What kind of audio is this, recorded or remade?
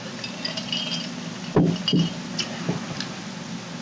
recorded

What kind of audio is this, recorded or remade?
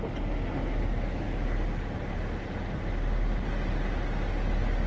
recorded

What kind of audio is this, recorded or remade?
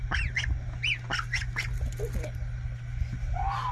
recorded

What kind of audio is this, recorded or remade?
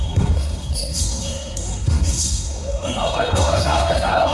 remade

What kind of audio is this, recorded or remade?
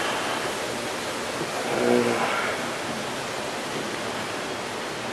recorded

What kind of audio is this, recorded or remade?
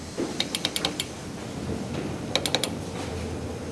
recorded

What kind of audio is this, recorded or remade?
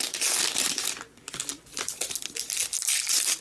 recorded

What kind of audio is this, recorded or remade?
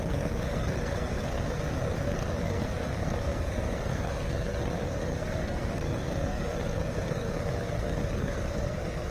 remade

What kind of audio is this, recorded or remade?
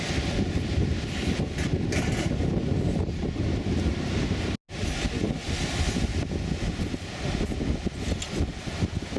recorded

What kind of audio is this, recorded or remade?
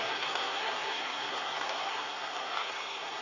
remade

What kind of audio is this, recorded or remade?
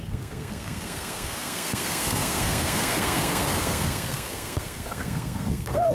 remade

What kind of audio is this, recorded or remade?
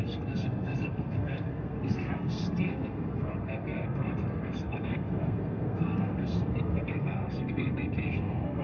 remade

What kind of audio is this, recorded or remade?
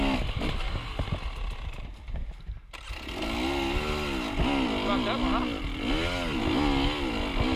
recorded